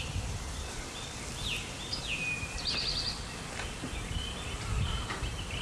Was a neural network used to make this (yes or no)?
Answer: no